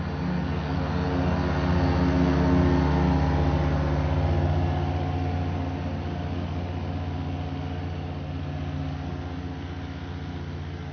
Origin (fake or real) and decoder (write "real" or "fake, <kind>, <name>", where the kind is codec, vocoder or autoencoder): real